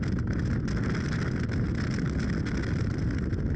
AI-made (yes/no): no